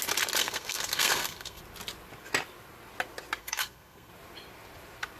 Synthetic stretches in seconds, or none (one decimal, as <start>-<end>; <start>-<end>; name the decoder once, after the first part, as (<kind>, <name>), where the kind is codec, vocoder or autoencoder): 0.4-1.6 (codec, SNAC); 3.4-4.1